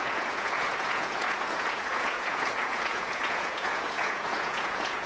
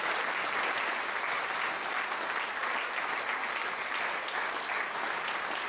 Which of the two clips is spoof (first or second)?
first